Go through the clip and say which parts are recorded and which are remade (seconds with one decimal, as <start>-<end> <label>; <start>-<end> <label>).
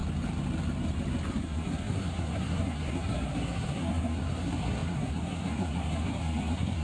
0.0-1.3 recorded; 1.3-6.8 remade